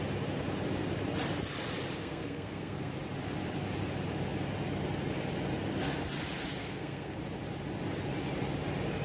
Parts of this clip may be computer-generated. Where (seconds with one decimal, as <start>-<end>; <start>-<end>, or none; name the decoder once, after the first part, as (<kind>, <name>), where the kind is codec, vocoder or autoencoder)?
2.0-2.9 (codec, SNAC); 6.6-7.2